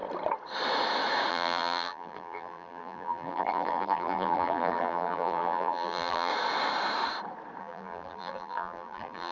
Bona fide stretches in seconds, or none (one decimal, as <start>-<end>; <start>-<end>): 0.0-1.3; 6.3-7.6